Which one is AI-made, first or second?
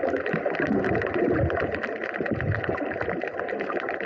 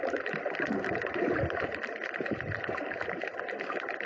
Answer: second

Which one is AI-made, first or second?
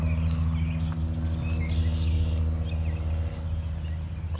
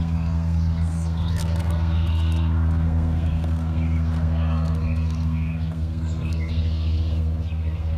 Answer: second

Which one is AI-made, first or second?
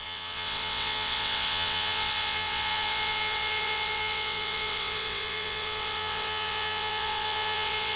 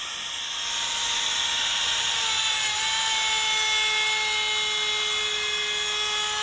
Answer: first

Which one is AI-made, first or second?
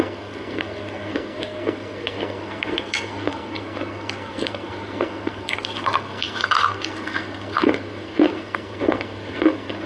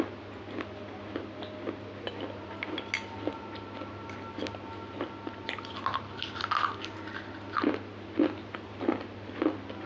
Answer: first